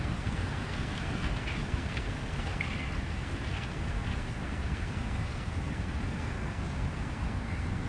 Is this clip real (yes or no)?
no